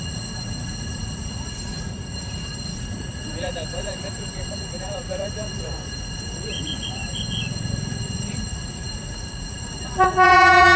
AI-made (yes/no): yes